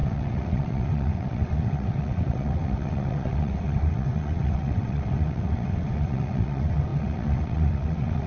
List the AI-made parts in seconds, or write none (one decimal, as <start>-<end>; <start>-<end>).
0.0-8.3